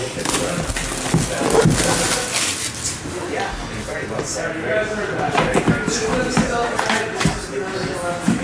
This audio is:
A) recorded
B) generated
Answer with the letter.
A